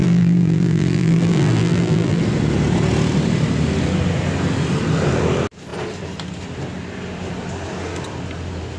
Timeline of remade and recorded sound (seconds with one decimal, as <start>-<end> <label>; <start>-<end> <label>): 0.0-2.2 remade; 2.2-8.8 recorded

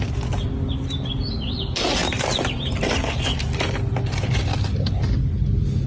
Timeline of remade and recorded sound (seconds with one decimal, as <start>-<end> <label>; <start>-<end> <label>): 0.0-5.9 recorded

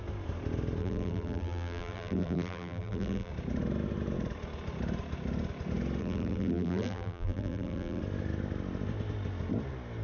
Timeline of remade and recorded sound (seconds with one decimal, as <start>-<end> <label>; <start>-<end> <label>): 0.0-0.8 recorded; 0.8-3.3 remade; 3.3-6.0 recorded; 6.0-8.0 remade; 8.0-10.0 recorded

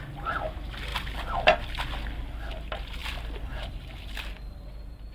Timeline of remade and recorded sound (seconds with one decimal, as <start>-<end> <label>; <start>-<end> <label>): 0.0-3.0 recorded; 3.0-3.8 remade; 3.8-5.1 recorded

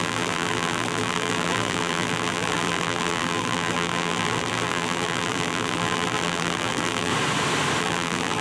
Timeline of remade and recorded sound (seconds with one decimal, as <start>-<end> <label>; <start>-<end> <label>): 0.0-7.1 remade; 7.1-7.8 recorded; 7.8-8.4 remade

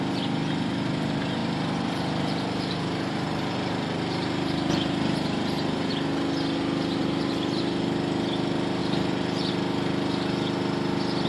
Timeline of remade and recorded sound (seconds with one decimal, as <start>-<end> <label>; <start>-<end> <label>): 0.0-1.4 recorded; 1.4-5.9 remade; 5.9-7.0 recorded; 7.0-7.6 remade; 7.6-8.8 recorded; 8.8-9.5 remade; 9.5-11.3 recorded

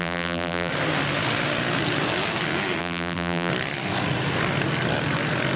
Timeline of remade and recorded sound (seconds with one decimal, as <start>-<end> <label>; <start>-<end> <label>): 0.0-0.7 remade; 0.7-2.8 recorded; 2.8-3.5 remade; 3.5-5.6 recorded